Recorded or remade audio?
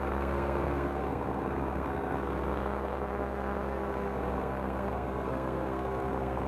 remade